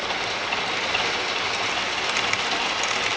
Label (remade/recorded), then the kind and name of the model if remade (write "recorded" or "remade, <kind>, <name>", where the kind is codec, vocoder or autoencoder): recorded